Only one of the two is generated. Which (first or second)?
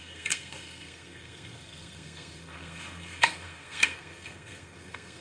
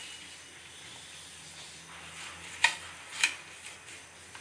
first